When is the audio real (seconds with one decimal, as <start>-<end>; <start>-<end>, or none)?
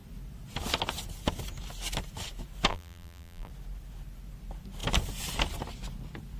0.0-2.7; 3.5-6.4